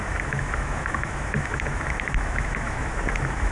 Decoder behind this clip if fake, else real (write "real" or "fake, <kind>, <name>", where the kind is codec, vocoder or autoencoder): fake, autoencoder, DAC-VAE